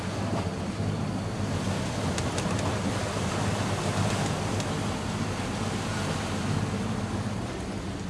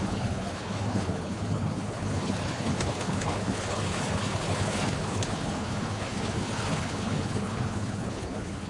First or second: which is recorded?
first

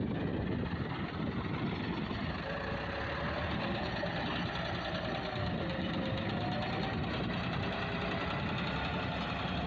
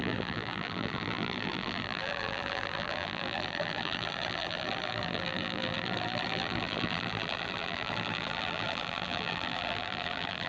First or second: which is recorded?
first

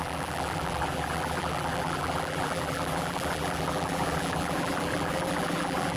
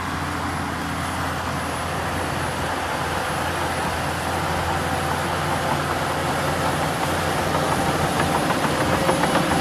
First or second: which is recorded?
second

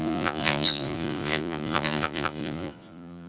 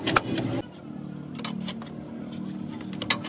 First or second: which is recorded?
second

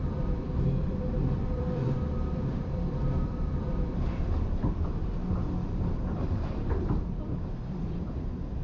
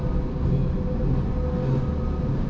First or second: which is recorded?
second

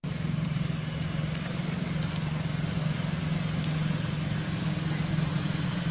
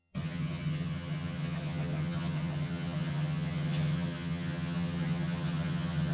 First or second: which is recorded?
first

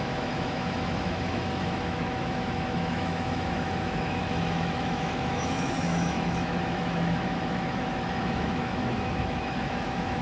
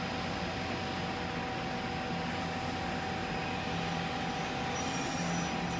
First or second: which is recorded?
second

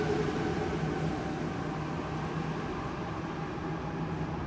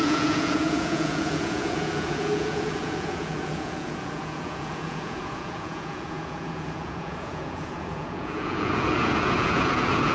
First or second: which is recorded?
first